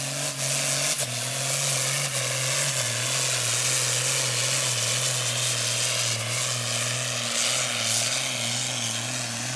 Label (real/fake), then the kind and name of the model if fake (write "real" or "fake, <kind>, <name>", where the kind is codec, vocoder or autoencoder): real